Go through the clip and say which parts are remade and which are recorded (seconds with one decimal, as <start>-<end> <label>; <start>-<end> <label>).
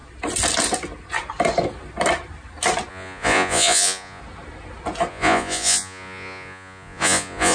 0.0-2.9 recorded; 2.9-4.2 remade; 4.2-5.1 recorded; 5.1-7.5 remade